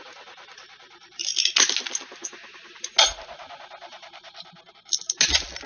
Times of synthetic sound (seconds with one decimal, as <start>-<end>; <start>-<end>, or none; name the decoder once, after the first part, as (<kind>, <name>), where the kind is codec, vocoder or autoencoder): none

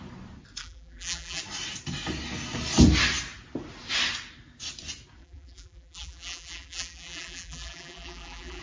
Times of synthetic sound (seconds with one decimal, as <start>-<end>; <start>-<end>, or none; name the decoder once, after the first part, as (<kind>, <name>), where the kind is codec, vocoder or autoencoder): 0.6-1.4 (vocoder, BigVGAN v2); 5.2-8.6

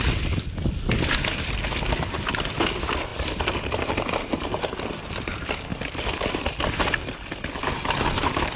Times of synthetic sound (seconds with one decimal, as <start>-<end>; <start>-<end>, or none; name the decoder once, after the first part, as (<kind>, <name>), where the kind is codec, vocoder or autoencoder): 0.0-3.1 (vocoder, BigVGAN v2); 4.9-8.6

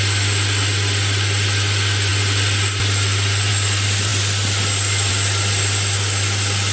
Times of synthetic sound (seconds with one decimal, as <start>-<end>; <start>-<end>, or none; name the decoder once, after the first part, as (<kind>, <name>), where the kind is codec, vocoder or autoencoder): none

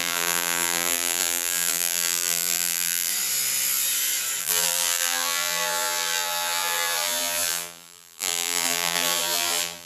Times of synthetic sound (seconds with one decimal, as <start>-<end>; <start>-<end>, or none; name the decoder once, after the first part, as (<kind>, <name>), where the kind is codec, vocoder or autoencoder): 0.0-3.1 (vocoder, BigVGAN v2); 4.4-9.9

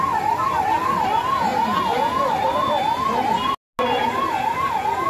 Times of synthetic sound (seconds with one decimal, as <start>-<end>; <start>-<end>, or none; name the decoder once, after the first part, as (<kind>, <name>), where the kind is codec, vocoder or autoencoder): none

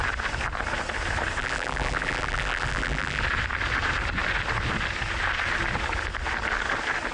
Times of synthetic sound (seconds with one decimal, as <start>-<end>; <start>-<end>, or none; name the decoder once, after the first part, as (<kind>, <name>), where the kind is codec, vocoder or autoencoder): 1.4-3.2 (vocoder, BigVGAN v2)

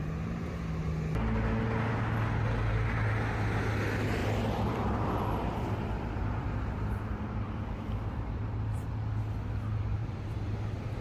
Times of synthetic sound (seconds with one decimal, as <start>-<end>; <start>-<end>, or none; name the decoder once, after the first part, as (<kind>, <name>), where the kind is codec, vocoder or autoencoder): 4.2-8.9 (vocoder, BigVGAN v2); 10.0-10.5